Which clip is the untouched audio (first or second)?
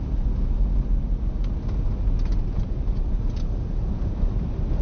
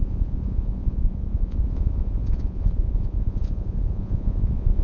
first